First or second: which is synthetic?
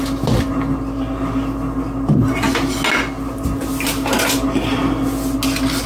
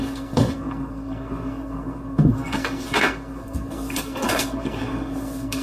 second